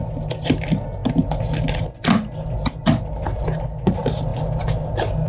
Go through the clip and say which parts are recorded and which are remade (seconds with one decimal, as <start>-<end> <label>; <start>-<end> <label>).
0.0-5.3 recorded